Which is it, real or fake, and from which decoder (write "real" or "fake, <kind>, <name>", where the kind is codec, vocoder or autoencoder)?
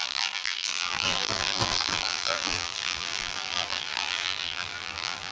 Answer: fake, vocoder, BigVGAN v2